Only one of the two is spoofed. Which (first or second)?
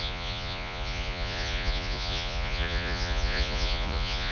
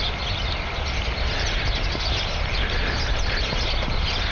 first